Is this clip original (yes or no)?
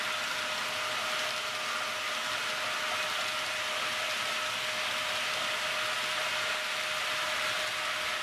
yes